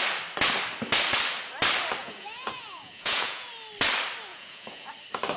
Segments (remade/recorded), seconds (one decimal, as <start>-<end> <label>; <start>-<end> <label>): 0.0-2.0 recorded; 2.0-3.5 remade; 3.5-4.3 recorded; 4.3-4.9 remade; 4.9-5.4 recorded